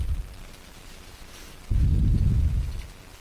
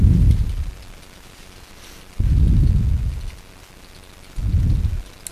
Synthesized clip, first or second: first